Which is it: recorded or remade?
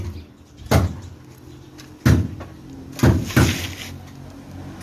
recorded